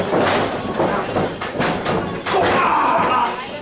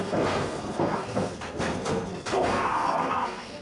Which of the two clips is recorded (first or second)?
first